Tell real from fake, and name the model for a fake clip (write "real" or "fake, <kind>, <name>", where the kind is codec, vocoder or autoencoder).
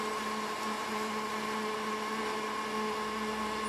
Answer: real